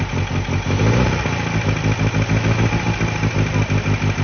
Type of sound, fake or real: real